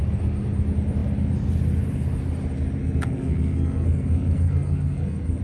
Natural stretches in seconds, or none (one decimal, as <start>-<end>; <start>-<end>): 0.0-2.8